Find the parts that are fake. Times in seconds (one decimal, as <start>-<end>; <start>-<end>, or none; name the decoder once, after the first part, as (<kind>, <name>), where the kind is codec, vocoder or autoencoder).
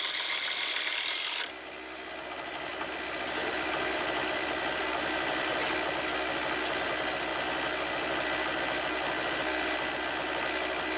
2.7-5.5 (vocoder, BigVGAN v2)